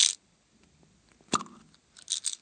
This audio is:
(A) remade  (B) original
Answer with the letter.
B